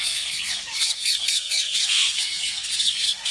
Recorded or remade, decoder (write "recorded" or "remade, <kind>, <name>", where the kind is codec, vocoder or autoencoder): remade, codec, SNAC